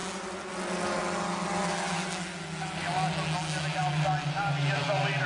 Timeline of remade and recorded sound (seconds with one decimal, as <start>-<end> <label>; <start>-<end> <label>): 0.0-5.3 recorded